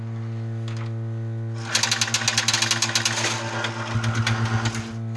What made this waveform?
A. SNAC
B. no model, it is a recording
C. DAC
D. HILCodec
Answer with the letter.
B